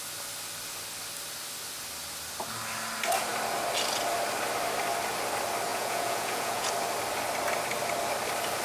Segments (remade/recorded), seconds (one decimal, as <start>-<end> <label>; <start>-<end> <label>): 0.0-5.7 recorded; 5.7-6.7 remade; 6.7-8.6 recorded